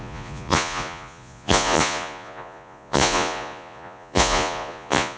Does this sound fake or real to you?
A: fake